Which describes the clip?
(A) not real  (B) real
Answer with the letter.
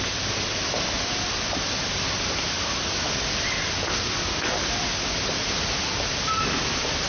A